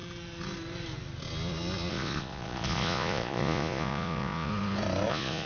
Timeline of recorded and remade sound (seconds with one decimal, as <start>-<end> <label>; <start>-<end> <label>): 0.0-1.9 recorded; 1.9-4.5 remade; 4.5-5.1 recorded; 5.1-5.5 remade